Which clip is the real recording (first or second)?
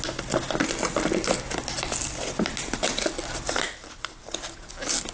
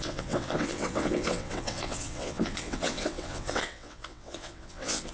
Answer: first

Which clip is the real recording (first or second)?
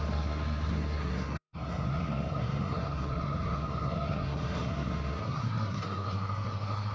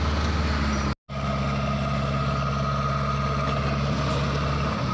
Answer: second